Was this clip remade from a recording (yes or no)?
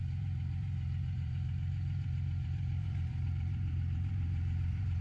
yes